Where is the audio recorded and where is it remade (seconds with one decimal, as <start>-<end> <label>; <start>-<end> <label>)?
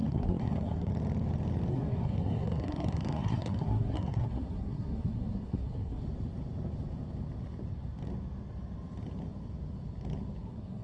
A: 0.0-0.9 remade; 0.9-1.7 recorded; 1.7-6.0 remade; 6.0-10.4 recorded; 10.4-10.8 remade